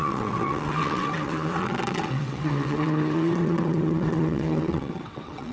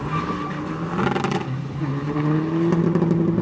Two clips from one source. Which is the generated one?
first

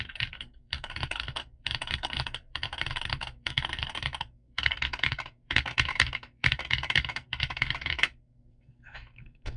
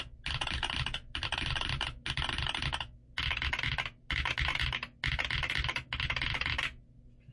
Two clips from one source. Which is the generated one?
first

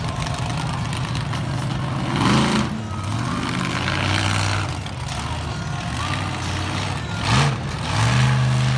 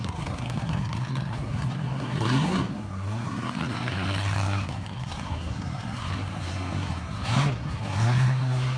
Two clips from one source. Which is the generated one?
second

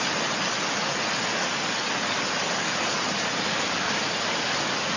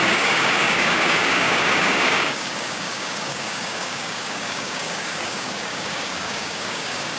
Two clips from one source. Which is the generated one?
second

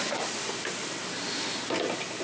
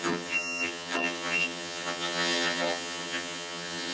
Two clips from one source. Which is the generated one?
second